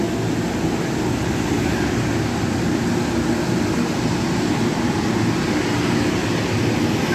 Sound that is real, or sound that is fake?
real